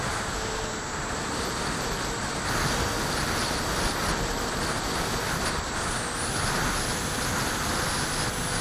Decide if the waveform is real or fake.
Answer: real